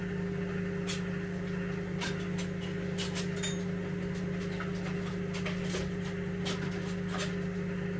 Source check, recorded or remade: recorded